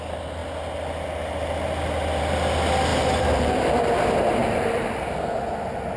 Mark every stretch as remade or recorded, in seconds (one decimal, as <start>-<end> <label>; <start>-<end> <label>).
0.0-2.9 recorded; 2.9-3.7 remade; 3.7-4.4 recorded; 4.4-5.0 remade; 5.0-6.0 recorded